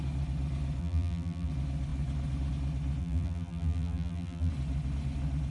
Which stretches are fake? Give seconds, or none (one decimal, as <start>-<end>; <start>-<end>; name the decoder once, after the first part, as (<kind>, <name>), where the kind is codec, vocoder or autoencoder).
0.8-1.5 (vocoder, BigVGAN v2); 3.0-4.5